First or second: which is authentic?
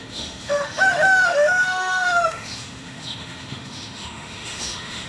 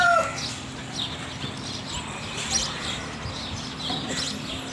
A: second